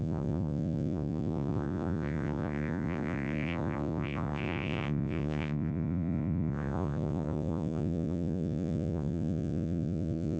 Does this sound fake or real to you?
fake